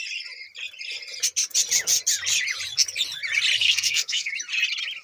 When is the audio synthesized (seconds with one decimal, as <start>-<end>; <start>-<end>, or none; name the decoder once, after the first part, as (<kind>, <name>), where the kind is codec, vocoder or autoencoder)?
3.6-4.3 (codec, SNAC)